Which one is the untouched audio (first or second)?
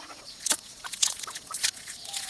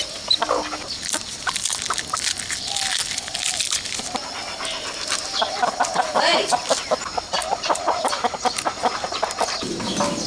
second